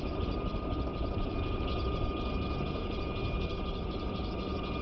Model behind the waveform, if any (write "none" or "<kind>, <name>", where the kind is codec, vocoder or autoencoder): none